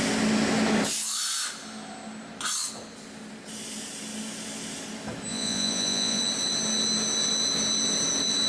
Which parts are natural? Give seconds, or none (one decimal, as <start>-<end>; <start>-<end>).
0.0-5.3; 6.2-8.5